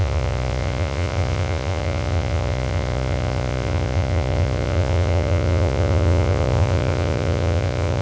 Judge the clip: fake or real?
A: fake